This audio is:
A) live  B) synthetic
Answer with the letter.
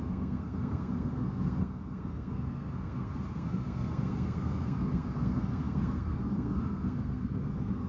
B